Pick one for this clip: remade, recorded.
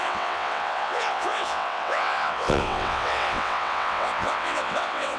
remade